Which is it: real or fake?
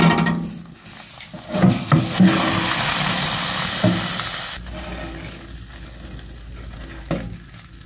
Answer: real